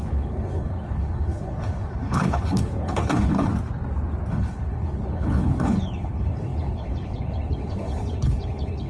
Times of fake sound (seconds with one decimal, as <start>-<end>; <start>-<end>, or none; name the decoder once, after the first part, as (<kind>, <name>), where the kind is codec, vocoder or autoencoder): 0.0-3.5 (codec, HILCodec); 4.3-8.9